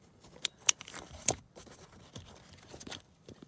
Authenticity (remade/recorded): remade